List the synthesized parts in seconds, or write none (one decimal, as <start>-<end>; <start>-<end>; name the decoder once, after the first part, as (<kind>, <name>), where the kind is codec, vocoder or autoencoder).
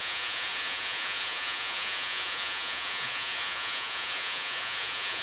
0.0-5.2 (vocoder, Vocos)